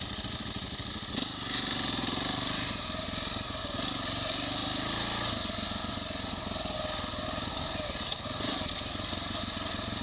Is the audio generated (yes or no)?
no